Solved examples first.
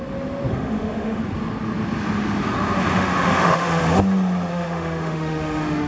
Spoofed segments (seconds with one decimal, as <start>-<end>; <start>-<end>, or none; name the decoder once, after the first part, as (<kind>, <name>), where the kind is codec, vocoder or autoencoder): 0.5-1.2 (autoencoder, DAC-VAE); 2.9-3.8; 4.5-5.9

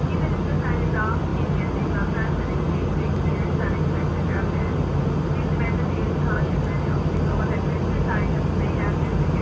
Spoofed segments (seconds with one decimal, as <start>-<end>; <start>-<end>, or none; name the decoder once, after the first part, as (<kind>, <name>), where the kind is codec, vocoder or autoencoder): none

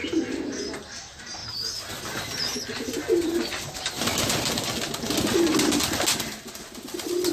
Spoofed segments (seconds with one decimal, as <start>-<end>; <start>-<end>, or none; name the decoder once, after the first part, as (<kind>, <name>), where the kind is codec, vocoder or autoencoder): none

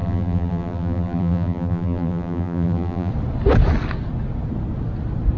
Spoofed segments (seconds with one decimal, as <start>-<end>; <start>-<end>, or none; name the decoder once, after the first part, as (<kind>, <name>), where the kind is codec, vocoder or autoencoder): 0.0-3.1 (vocoder, BigVGAN v2)